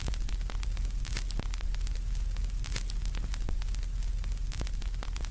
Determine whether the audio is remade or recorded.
recorded